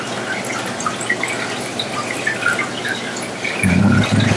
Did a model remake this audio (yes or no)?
no